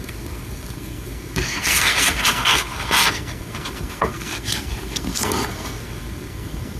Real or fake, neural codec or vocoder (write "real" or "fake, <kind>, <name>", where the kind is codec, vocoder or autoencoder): fake, codec, SNAC